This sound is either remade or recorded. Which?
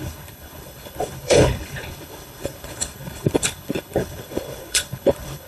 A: remade